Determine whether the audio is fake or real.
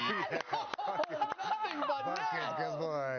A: real